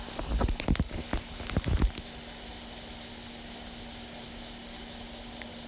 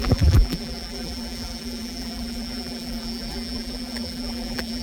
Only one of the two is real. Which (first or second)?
first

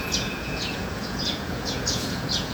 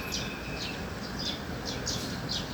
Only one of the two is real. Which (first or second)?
second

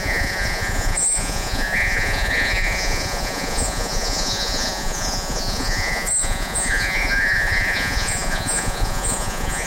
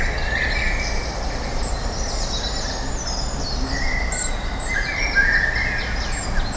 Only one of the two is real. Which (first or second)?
second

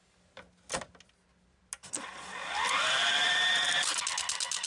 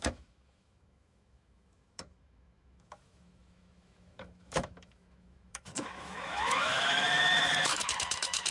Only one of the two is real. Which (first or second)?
first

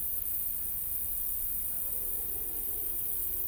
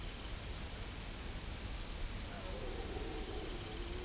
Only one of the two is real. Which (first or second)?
second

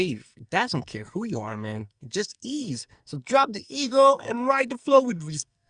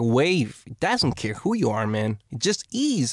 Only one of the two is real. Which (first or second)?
second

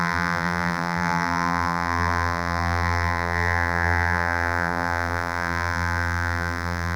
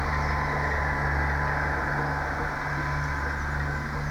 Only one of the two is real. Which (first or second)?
second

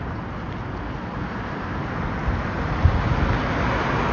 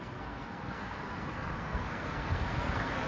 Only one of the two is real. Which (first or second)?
first